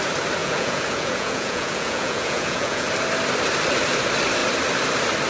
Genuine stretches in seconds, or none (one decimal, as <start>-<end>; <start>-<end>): 0.0-0.4; 2.9-5.3